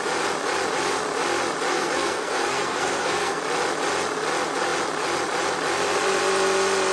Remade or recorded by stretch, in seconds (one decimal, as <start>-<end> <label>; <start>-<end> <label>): 0.0-1.7 recorded; 1.7-3.4 remade; 3.4-6.9 recorded

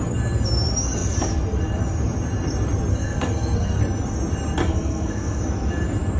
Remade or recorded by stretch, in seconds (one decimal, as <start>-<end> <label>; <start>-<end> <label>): 0.0-2.9 recorded; 2.9-3.8 remade; 3.8-4.6 recorded; 4.6-5.4 remade; 5.4-6.2 recorded